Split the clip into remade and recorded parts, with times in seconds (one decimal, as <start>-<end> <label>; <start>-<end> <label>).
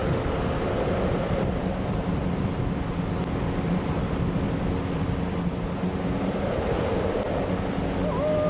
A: 0.0-8.5 recorded